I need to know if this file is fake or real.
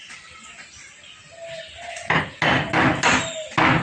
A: real